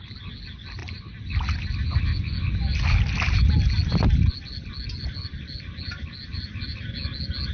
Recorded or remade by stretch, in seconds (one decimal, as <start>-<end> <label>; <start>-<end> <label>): 0.0-7.5 recorded

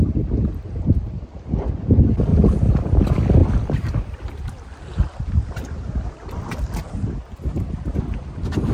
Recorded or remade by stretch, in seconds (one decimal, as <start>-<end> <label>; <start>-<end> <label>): 0.0-2.3 recorded; 2.3-3.0 remade; 3.0-3.4 recorded; 3.4-8.0 remade; 8.0-8.7 recorded

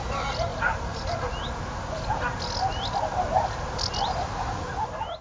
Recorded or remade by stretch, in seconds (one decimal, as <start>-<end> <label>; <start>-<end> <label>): 0.0-0.5 recorded; 0.5-1.3 remade; 1.3-5.2 recorded

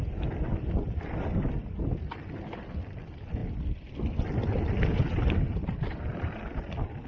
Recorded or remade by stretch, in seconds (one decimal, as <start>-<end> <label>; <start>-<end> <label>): 0.0-7.1 remade

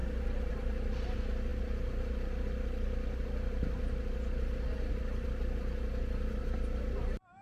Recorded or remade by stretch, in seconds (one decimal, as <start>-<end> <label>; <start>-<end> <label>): 0.0-0.5 remade; 0.5-7.4 recorded

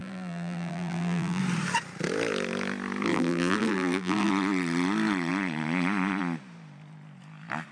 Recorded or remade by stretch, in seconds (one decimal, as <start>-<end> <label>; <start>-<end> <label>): 0.0-1.4 remade; 1.4-3.1 recorded; 3.1-4.3 remade; 4.3-7.7 recorded

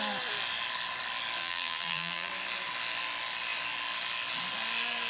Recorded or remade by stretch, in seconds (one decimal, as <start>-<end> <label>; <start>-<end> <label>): 0.0-1.4 recorded; 1.4-2.3 remade; 2.3-5.1 recorded